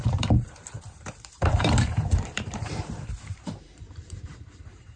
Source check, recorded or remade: remade